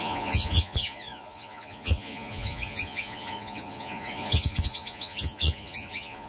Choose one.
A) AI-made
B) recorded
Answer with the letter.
A